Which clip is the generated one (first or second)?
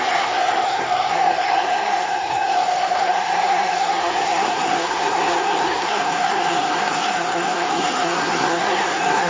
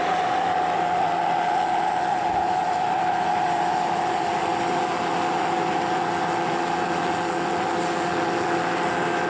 first